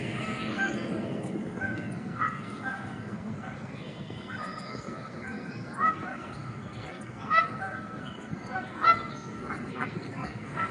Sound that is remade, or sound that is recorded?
remade